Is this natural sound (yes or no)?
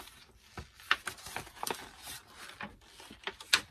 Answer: yes